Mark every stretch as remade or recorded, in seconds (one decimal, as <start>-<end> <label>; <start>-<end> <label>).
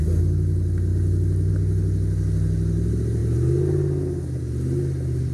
0.0-5.3 recorded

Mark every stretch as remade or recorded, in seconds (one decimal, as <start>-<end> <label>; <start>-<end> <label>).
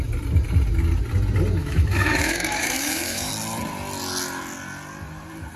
0.0-1.6 recorded; 1.6-3.3 remade; 3.3-5.6 recorded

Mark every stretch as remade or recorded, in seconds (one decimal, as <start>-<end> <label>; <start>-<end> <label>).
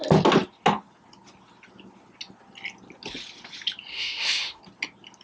0.0-3.9 recorded; 3.9-4.6 remade; 4.6-5.2 recorded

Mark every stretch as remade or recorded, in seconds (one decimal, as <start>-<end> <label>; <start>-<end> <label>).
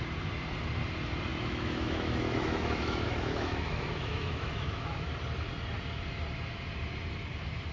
0.0-1.3 recorded; 1.3-5.1 remade; 5.1-7.7 recorded